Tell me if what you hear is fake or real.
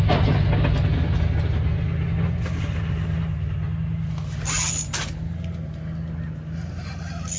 real